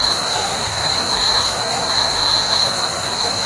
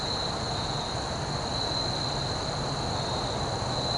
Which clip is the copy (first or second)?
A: first